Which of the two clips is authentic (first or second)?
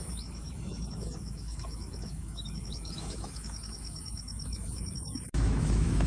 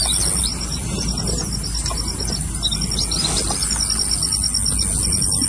second